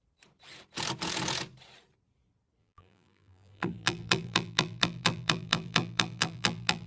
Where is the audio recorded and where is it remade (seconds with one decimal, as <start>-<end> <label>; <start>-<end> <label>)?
0.0-2.6 recorded; 2.6-6.9 remade